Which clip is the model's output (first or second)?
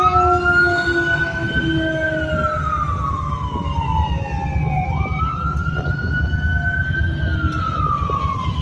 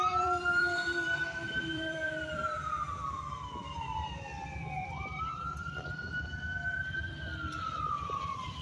second